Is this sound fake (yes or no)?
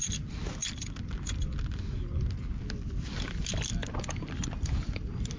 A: no